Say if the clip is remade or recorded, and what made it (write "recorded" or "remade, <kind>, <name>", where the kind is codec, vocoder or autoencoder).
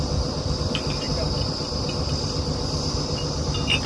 recorded